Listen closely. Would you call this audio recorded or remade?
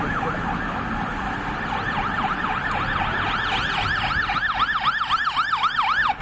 recorded